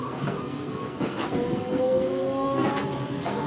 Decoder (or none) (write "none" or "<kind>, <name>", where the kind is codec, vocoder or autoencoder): codec, SNAC